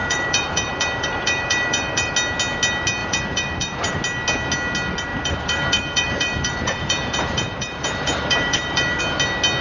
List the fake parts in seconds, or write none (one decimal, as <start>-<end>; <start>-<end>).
0.0-2.1; 3.0-4.0; 5.1-9.0

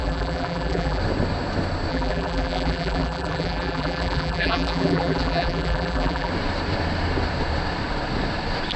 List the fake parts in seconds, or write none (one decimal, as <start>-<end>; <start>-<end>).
0.0-1.0; 1.9-6.3

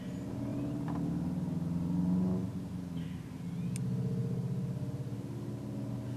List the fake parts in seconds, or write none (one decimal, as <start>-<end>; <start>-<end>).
0.5-1.1

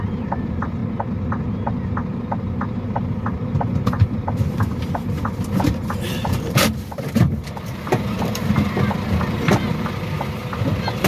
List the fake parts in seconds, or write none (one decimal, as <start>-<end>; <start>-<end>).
0.0-0.8; 2.4-11.1

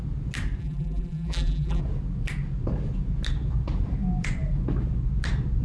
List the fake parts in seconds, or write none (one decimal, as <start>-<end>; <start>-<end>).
0.6-1.8

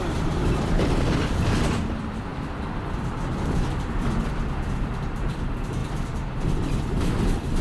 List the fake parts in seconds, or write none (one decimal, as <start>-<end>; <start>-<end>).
0.0-5.8; 6.9-7.6